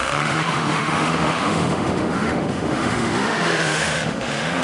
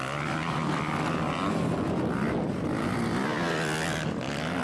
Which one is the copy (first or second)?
first